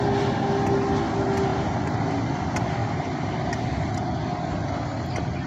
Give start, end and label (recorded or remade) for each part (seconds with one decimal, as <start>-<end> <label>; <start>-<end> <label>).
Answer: 0.0-1.5 recorded; 1.5-2.4 remade; 2.4-2.8 recorded; 2.8-3.9 remade; 3.9-5.5 recorded